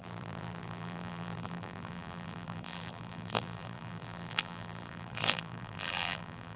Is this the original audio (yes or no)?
no